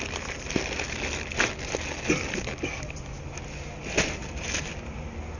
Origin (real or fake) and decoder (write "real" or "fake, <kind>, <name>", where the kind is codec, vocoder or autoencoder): real